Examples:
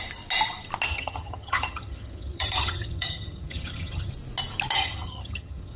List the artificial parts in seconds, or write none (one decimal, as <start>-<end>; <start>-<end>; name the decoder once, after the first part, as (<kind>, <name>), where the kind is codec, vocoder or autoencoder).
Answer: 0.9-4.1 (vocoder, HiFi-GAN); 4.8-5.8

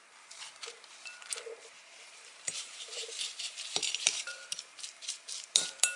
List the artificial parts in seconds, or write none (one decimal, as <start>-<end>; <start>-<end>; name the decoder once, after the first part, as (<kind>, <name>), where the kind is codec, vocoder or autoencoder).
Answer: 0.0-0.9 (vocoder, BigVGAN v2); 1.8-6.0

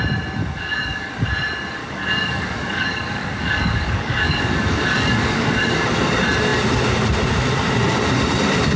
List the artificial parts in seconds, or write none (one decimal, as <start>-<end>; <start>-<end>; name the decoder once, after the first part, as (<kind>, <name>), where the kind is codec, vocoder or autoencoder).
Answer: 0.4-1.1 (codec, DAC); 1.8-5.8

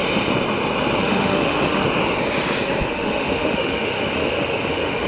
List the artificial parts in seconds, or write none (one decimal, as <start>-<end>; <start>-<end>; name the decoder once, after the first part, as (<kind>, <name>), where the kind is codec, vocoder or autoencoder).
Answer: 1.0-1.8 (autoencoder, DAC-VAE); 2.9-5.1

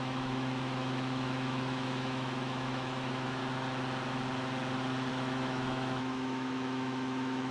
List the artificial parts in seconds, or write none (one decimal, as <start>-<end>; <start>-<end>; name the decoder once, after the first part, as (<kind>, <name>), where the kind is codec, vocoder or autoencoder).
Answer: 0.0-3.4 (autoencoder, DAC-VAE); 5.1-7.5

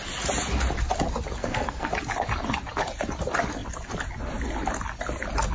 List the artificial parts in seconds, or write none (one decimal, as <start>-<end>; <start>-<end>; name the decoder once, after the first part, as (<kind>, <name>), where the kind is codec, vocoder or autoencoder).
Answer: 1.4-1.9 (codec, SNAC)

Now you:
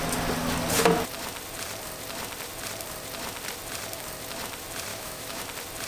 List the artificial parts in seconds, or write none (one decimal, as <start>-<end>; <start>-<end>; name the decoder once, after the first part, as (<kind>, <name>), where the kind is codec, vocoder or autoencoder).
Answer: 4.9-5.4 (autoencoder, DAC-VAE)

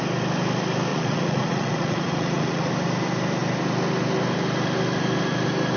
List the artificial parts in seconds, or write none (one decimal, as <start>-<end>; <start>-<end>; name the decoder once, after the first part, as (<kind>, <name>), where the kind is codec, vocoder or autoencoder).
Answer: 0.9-2.7 (vocoder, Vocos)